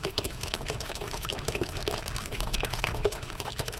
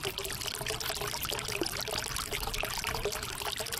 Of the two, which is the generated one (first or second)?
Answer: first